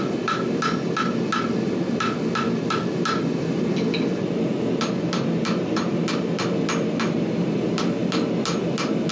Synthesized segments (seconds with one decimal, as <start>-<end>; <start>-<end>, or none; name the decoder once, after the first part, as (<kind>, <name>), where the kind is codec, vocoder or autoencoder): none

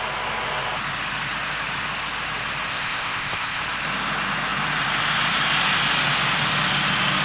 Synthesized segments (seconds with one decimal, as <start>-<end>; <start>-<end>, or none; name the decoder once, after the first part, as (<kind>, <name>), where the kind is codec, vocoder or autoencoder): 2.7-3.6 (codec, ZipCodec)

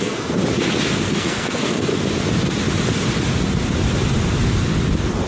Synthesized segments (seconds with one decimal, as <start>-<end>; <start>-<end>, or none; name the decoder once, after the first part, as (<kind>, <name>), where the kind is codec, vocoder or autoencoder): 0.0-0.4 (codec, SNAC); 0.9-1.9

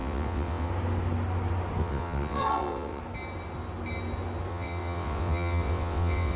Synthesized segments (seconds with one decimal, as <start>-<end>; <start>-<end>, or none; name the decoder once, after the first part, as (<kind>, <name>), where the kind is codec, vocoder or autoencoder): 0.0-0.7 (vocoder, WaveNeXt); 1.8-3.0; 4.5-6.4

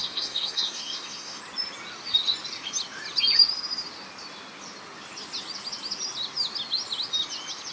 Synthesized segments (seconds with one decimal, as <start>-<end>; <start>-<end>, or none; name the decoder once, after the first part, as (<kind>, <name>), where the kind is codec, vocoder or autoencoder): 0.0-1.4 (codec, SNAC)